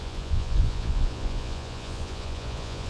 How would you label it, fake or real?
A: fake